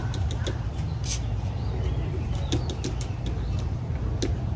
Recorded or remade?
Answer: recorded